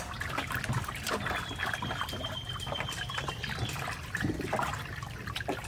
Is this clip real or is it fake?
real